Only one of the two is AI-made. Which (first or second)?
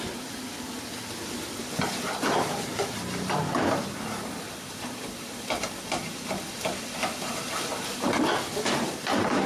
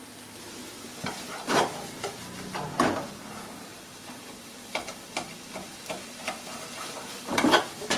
first